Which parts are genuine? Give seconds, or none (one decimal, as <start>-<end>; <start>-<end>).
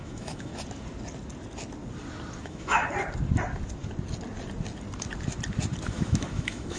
0.5-2.4; 2.8-5.9